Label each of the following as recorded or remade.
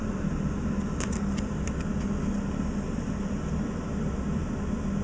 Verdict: recorded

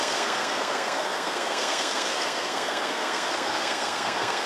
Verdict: remade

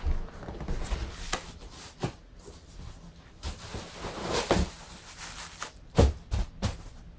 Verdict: recorded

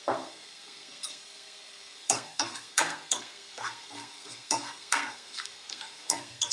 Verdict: remade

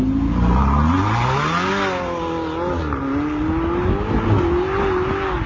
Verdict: recorded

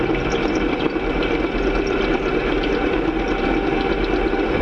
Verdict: recorded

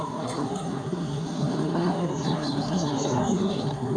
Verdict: remade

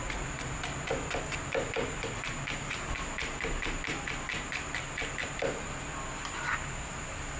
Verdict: recorded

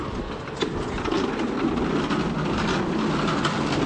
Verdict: recorded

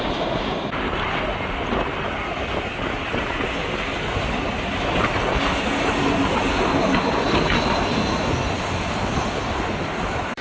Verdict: recorded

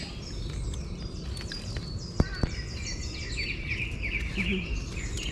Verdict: recorded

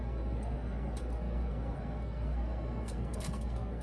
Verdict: remade